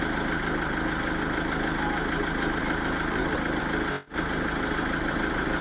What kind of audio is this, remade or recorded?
recorded